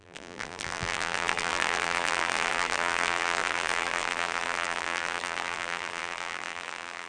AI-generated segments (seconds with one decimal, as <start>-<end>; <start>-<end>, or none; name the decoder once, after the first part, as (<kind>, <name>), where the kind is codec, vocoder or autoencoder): 0.0-7.1 (vocoder, BigVGAN v2)